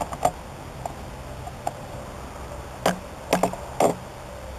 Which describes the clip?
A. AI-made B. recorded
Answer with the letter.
B